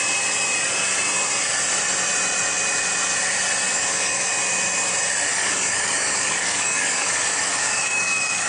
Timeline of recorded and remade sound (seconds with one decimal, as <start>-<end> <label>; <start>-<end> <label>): 0.0-3.7 recorded; 3.7-4.3 remade; 4.3-5.3 recorded; 5.3-8.5 remade